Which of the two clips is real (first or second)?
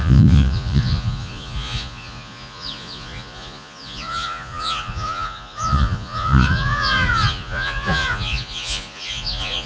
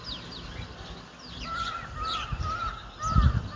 second